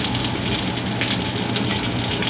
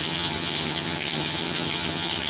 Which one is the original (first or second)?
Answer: first